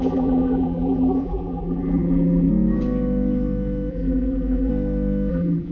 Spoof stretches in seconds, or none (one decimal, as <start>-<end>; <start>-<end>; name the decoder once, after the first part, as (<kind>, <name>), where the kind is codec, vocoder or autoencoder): 0.0-2.5 (vocoder, BigVGAN v2); 3.9-4.7; 5.3-5.7